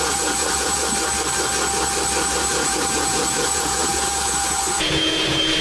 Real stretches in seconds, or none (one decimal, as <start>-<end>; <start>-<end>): 0.8-2.5